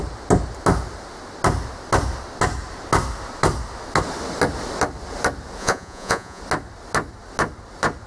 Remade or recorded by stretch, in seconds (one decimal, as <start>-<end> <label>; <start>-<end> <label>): 0.0-5.6 recorded; 5.6-6.4 remade; 6.4-8.1 recorded